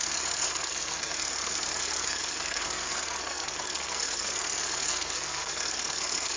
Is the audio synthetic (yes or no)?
yes